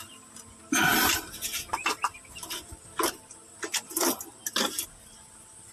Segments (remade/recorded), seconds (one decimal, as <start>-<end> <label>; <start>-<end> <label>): 0.0-0.9 recorded; 0.9-4.3 remade; 4.3-5.7 recorded